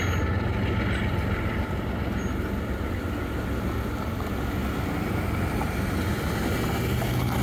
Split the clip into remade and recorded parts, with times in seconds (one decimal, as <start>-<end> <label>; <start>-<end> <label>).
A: 0.0-7.4 recorded